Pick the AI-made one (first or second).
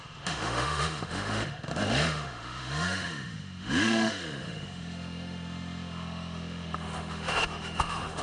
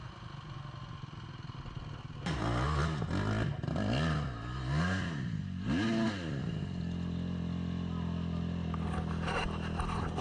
first